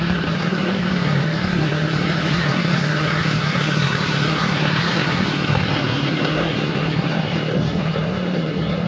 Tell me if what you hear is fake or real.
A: fake